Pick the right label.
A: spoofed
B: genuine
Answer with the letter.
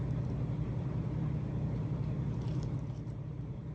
A